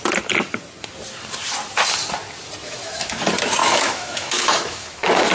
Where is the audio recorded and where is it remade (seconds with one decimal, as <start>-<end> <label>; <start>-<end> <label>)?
0.0-2.6 recorded; 2.6-3.2 remade; 3.2-3.6 recorded; 3.6-5.3 remade

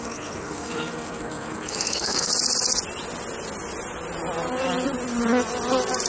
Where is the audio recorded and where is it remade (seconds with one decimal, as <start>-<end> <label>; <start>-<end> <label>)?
0.0-2.3 remade; 2.3-6.1 recorded

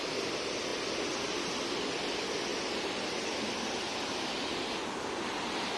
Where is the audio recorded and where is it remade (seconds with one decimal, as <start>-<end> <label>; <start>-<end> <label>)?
0.0-2.5 recorded; 2.5-4.1 remade; 4.1-5.8 recorded

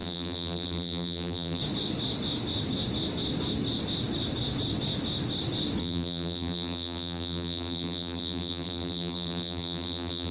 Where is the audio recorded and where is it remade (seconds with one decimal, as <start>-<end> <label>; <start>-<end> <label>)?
0.0-1.6 remade; 1.6-5.8 recorded; 5.8-10.3 remade

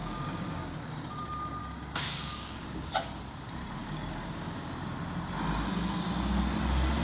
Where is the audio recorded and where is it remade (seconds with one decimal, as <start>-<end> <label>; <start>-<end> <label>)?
0.0-0.8 remade; 0.8-1.6 recorded; 1.6-2.9 remade; 2.9-3.8 recorded; 3.8-4.7 remade; 4.7-7.0 recorded

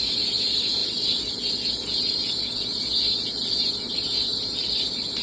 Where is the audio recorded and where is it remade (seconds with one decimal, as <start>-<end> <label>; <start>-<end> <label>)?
0.0-0.8 remade; 0.8-3.9 recorded; 3.9-5.2 remade

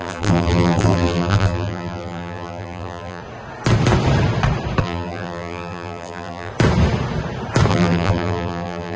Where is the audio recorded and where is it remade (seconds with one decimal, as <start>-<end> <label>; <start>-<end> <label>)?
0.0-3.2 remade; 3.2-4.8 recorded; 4.8-6.5 remade; 6.5-7.7 recorded; 7.7-9.0 remade